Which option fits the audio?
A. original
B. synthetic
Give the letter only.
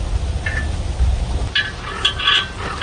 A